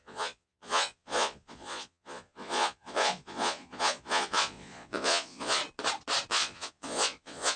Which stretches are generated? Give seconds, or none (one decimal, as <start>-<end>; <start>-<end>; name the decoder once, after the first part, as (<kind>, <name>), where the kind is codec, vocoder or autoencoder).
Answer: 0.0-5.6 (vocoder, Vocos); 6.3-7.6

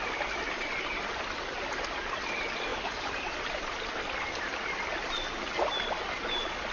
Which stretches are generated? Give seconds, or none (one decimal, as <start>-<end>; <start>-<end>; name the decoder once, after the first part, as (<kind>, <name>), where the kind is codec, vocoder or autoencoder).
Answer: none

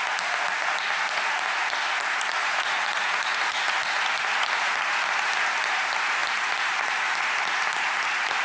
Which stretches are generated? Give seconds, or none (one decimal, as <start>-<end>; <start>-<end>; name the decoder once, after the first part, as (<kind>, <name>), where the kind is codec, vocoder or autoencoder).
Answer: 2.4-3.6 (vocoder, Vocos)

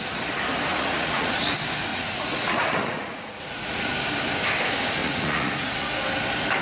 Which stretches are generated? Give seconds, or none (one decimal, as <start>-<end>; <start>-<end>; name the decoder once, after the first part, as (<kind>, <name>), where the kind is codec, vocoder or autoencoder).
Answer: 0.7-1.5 (vocoder, Vocos); 1.9-3.9; 5.0-5.9

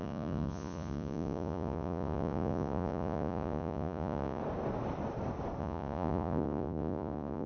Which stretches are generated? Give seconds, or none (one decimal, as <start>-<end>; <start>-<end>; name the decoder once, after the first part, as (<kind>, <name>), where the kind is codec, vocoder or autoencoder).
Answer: 0.0-4.4 (vocoder, Vocos); 5.6-7.5

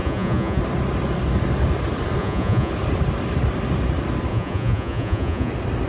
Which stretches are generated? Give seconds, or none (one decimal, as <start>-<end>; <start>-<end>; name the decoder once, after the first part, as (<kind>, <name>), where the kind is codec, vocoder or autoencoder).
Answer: 0.0-0.6 (vocoder, Vocos); 2.2-2.7; 4.3-5.5

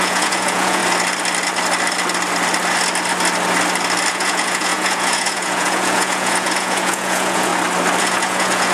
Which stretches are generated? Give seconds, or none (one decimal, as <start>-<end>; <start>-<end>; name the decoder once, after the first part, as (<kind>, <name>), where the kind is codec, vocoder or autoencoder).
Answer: 0.0-0.8 (vocoder, Vocos); 4.1-7.5; 8.0-8.7

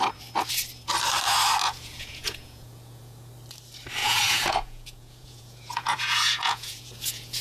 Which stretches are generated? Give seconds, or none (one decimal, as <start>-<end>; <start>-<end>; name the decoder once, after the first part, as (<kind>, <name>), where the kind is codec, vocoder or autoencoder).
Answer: 1.6-3.3 (vocoder, Vocos); 4.0-7.4